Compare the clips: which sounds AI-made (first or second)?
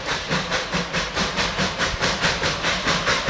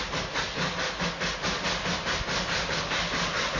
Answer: first